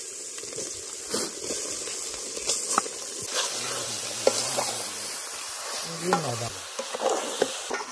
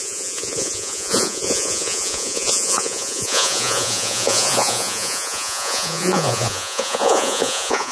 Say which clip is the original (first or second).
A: first